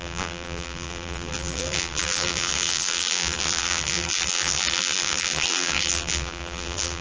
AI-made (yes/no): yes